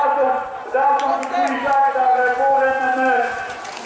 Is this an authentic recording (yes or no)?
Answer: yes